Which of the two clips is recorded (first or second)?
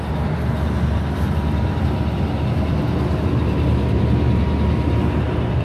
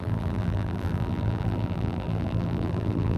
first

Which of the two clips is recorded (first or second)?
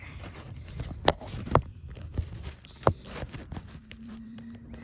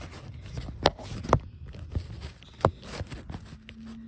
second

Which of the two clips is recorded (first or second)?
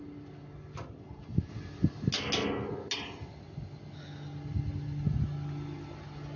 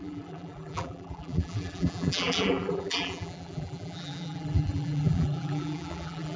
first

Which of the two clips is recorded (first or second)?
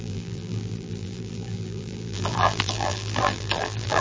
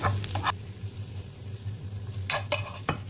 second